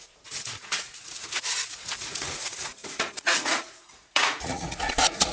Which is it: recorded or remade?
remade